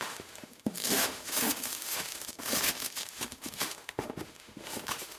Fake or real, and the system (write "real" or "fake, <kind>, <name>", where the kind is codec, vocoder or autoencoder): fake, autoencoder, DAC-VAE